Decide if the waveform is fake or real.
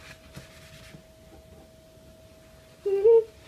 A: real